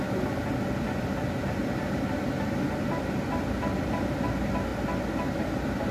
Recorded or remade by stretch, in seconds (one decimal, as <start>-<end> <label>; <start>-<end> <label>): 0.0-5.9 recorded